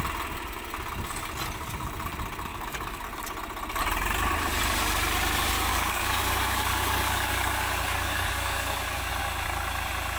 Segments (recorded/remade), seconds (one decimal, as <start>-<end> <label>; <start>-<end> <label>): 0.0-2.5 recorded; 2.5-3.0 remade; 3.0-5.7 recorded; 5.7-9.1 remade; 9.1-10.2 recorded